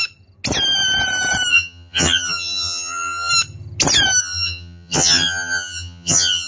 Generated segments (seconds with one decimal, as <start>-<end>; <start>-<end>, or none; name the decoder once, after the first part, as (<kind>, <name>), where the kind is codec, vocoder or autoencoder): 1.5-3.3 (vocoder, HiFi-GAN); 4.2-6.5